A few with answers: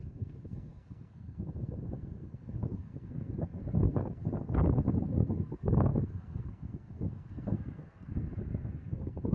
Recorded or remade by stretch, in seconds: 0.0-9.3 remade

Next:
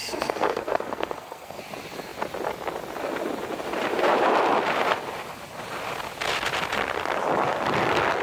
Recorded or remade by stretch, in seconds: 0.0-1.6 remade; 1.6-8.2 recorded

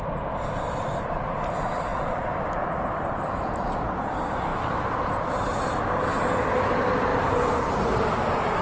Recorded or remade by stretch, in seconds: 0.0-1.9 recorded; 1.9-2.5 remade; 2.5-7.1 recorded; 7.1-8.6 remade